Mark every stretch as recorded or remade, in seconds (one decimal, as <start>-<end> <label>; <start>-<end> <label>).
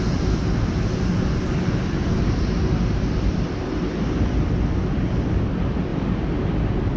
0.0-7.0 recorded